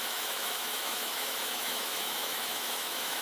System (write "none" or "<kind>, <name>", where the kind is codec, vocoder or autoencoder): autoencoder, DAC-VAE